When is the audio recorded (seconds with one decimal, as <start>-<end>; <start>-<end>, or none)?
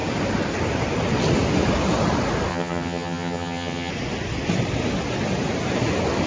0.0-2.5; 3.9-6.3